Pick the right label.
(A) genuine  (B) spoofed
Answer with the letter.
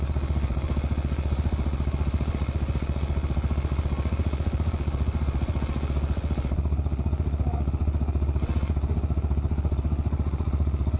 B